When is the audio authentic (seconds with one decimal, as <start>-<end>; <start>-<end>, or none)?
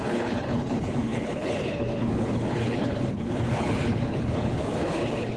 none